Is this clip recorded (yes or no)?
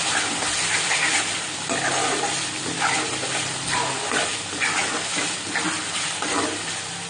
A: yes